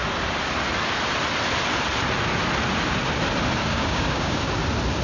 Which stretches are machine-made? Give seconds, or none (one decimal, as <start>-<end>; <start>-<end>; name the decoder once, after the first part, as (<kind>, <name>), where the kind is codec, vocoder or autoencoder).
3.6-4.4 (codec, DAC)